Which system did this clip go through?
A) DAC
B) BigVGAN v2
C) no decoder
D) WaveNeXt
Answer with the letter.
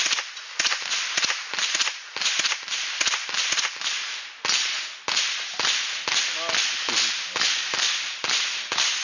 C